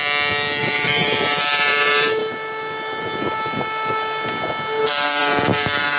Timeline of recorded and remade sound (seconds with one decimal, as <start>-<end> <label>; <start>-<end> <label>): 0.0-0.6 recorded; 0.6-2.2 remade; 2.2-4.8 recorded; 4.8-6.0 remade